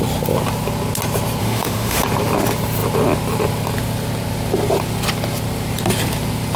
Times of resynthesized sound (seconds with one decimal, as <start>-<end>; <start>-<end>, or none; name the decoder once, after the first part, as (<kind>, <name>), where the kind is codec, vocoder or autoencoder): 1.4-2.0 (autoencoder, DAC-VAE)